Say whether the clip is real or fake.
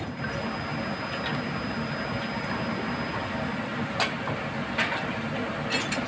real